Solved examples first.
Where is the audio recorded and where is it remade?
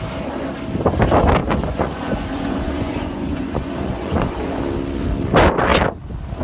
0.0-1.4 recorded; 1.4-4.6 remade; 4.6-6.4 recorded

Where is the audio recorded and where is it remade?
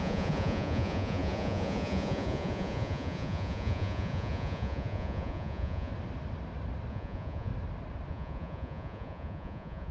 0.0-5.9 remade; 5.9-6.9 recorded; 6.9-7.5 remade; 7.5-8.1 recorded; 8.1-9.9 remade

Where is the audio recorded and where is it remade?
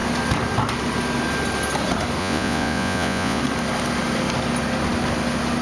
0.0-2.2 recorded; 2.2-3.4 remade; 3.4-5.6 recorded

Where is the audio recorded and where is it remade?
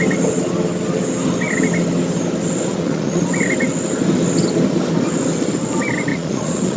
0.0-2.7 recorded; 2.7-3.3 remade; 3.3-6.1 recorded; 6.1-6.8 remade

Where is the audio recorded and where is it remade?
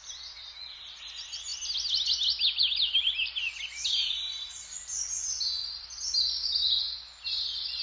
0.0-7.8 recorded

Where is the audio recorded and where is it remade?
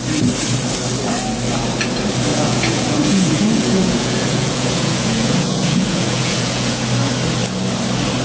0.0-2.3 recorded; 2.3-6.8 remade; 6.8-8.2 recorded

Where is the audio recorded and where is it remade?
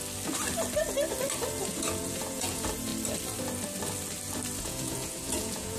0.0-1.6 recorded; 1.6-2.9 remade; 2.9-4.6 recorded; 4.6-5.8 remade